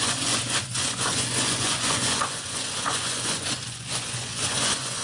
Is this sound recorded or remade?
remade